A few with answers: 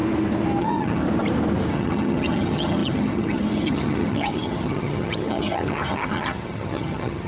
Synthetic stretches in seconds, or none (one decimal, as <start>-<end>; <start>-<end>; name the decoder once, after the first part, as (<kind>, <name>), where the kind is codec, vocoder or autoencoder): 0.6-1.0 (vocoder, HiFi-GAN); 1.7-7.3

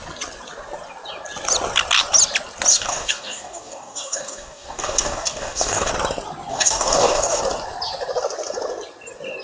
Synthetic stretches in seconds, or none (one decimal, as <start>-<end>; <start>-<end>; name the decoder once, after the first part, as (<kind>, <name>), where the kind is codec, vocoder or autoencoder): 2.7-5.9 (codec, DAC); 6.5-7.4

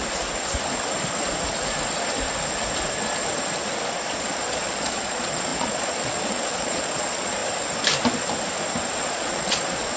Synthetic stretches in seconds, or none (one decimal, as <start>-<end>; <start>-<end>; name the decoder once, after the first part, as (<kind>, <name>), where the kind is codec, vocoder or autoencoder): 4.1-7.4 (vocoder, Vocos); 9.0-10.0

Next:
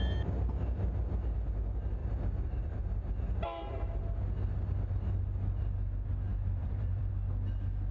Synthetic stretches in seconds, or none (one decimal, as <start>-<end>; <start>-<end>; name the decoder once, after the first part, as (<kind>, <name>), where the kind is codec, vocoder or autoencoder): 2.0-4.0 (vocoder, BigVGAN v2); 6.3-7.1

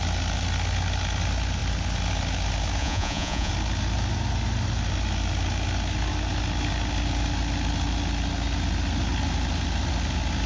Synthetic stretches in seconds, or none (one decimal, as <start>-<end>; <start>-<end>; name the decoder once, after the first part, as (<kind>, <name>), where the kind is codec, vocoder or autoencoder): 2.8-3.5 (vocoder, Vocos)